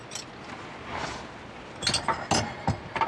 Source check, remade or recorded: recorded